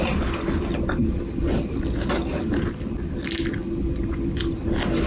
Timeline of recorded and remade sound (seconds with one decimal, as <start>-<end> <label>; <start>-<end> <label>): 0.0-5.1 recorded